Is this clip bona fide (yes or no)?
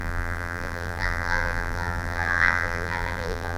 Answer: no